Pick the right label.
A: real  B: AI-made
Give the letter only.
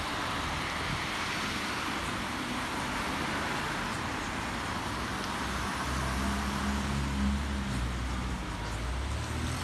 A